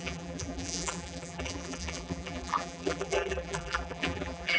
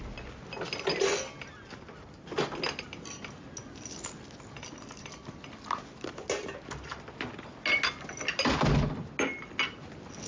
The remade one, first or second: first